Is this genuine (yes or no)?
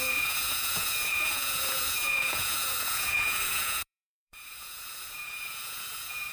no